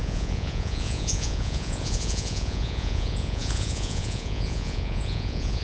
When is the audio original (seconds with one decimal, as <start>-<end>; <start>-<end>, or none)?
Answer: none